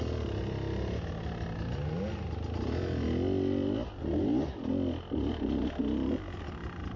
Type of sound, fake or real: real